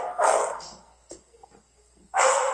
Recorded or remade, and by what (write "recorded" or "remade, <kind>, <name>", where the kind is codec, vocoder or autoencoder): remade, codec, SNAC